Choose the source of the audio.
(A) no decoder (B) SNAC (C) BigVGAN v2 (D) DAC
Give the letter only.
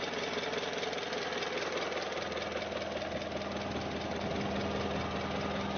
A